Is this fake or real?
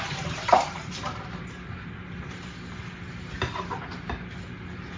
real